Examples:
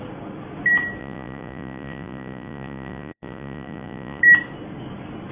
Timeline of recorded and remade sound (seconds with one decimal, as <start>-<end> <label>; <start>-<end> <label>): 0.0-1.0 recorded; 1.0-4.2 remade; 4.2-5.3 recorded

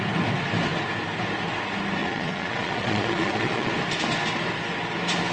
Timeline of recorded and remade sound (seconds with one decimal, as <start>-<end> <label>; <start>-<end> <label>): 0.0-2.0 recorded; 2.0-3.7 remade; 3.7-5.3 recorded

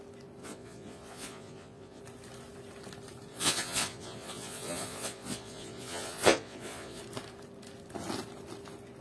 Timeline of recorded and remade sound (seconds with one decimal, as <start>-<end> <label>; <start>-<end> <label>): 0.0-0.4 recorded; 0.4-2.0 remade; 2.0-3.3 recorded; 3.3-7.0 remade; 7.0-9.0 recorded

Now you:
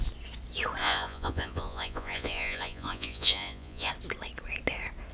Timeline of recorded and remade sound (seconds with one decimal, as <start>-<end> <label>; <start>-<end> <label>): 0.0-0.8 recorded; 0.8-3.9 remade; 3.9-5.1 recorded

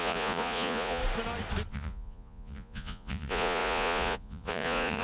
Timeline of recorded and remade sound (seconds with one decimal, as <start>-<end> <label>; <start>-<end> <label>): 0.0-1.0 remade; 1.0-1.7 recorded; 1.7-5.0 remade

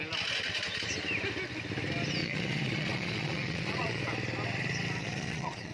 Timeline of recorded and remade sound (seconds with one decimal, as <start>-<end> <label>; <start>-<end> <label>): 0.0-2.2 recorded; 2.2-4.0 remade; 4.0-5.0 recorded; 5.0-5.7 remade

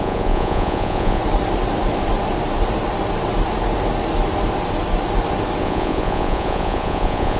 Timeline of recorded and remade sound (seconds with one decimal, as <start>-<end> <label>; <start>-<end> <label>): 0.0-1.2 remade; 1.2-5.6 recorded; 5.6-7.4 remade

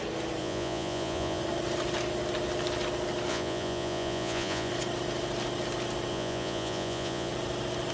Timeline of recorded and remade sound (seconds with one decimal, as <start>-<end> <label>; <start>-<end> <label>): 0.0-0.4 recorded; 0.4-1.4 remade; 1.4-3.3 recorded; 3.3-4.7 remade; 4.7-6.1 recorded; 6.1-7.3 remade; 7.3-7.9 recorded